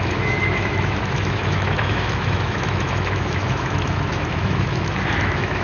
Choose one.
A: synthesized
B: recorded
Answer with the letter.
A